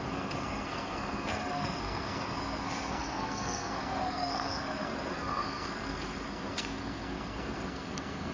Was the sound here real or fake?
fake